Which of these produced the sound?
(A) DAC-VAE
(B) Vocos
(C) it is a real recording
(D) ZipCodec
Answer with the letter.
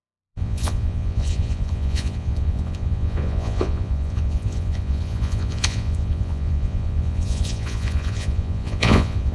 B